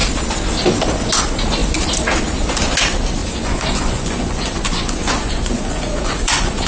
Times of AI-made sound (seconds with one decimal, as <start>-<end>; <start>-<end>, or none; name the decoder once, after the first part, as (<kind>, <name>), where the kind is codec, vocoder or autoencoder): 3.2-6.7 (vocoder, Vocos)